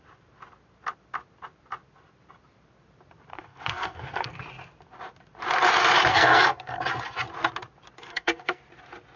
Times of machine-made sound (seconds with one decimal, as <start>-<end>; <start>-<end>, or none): 3.3-4.4; 6.1-6.8; 8.0-8.6